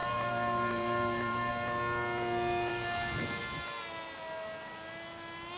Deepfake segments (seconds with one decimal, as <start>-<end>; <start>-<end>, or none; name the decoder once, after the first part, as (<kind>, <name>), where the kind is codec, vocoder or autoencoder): 0.0-1.5 (vocoder, BigVGAN v2); 2.7-3.4